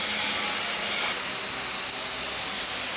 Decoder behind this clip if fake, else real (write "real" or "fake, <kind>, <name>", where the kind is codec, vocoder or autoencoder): real